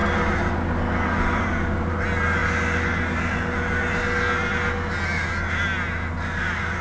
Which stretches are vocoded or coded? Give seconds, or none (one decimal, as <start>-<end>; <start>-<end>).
none